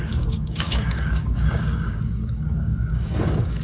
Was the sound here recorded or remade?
remade